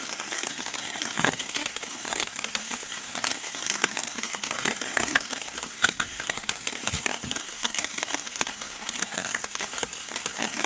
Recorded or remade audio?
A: remade